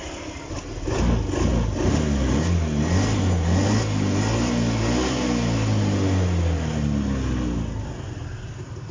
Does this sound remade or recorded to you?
recorded